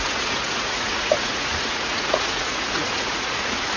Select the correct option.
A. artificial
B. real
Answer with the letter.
A